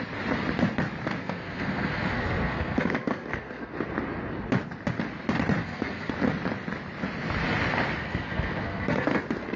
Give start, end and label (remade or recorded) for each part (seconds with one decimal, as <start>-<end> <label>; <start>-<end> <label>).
0.0-1.2 recorded; 1.2-3.7 remade; 3.7-5.6 recorded; 5.6-6.1 remade; 6.1-8.0 recorded; 8.0-9.2 remade; 9.2-9.6 recorded